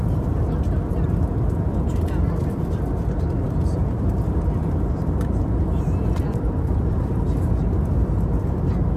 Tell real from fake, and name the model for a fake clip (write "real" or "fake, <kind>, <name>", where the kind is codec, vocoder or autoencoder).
fake, vocoder, BigVGAN v2